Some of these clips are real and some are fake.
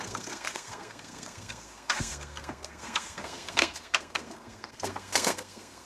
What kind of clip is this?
fake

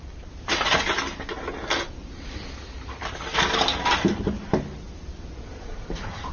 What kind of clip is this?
real